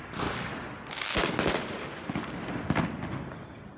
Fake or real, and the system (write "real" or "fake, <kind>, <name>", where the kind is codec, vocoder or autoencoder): real